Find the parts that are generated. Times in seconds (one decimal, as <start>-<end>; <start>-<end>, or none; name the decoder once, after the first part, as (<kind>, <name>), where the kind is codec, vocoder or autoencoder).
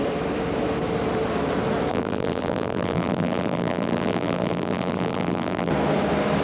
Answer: 1.9-5.7 (vocoder, BigVGAN v2)